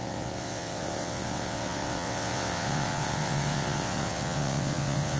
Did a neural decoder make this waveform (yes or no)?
yes